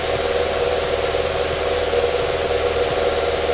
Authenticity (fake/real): real